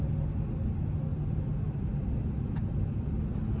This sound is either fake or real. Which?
real